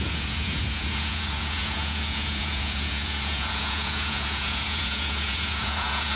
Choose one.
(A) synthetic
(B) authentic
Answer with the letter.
A